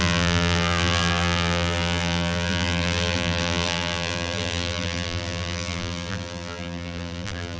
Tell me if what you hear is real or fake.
fake